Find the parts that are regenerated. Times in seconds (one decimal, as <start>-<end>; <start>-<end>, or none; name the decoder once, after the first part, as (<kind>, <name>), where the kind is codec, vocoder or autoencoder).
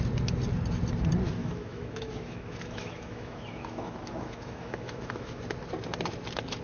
1.4-5.4 (autoencoder, DAC-VAE)